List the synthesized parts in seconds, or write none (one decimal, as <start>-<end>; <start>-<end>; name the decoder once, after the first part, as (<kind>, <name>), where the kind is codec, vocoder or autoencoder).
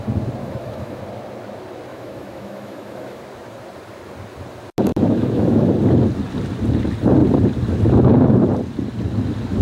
0.4-1.0 (autoencoder, DAC-VAE); 1.9-3.2; 4.9-5.7